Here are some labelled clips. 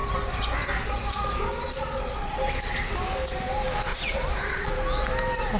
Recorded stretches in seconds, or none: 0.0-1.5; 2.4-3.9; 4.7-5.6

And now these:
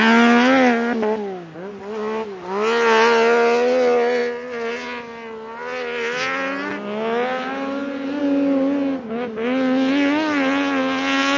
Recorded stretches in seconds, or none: 0.0-11.4